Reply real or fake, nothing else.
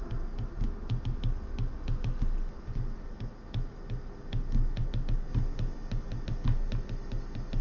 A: real